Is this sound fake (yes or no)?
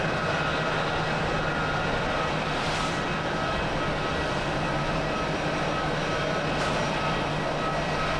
no